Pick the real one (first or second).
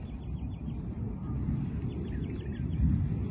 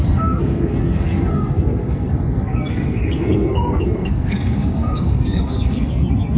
first